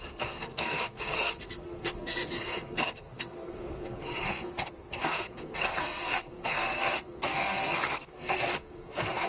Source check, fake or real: fake